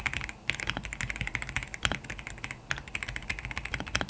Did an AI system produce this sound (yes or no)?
no